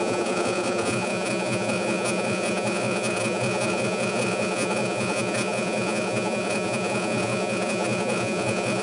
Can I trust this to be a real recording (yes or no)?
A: no